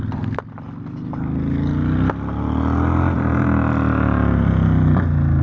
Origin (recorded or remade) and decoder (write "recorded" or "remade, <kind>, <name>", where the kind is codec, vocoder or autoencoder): recorded